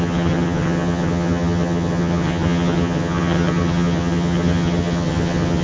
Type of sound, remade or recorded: remade